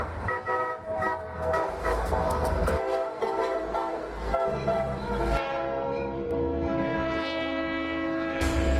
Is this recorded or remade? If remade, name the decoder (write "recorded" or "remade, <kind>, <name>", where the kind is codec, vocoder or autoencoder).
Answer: remade, codec, SNAC